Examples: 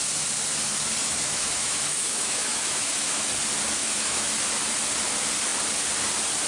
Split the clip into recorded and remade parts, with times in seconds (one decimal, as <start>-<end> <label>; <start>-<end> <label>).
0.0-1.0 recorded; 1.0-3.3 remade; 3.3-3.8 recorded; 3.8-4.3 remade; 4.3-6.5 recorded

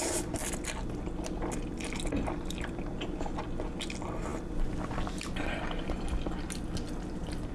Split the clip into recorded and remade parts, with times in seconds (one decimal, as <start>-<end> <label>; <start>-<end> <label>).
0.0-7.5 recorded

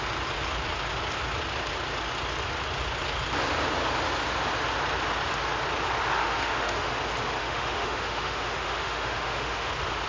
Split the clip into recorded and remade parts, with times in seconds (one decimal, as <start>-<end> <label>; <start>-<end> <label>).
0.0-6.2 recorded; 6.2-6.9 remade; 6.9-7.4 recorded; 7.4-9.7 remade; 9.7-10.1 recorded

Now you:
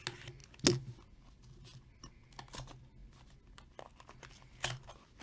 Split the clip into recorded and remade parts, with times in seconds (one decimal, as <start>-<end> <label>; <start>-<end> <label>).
0.0-5.2 recorded

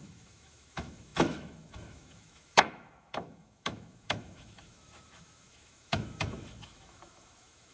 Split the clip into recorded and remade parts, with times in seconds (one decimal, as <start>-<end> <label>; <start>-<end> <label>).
0.0-7.7 remade